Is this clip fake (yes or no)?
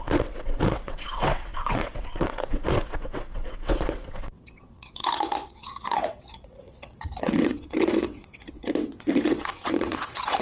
yes